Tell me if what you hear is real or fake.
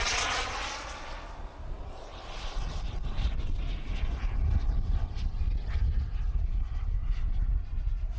real